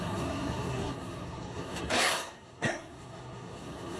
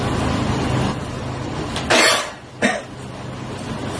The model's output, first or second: first